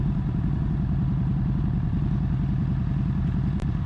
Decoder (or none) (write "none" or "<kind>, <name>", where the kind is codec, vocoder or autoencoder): vocoder, BigVGAN v2